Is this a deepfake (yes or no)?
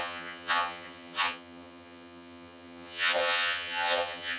yes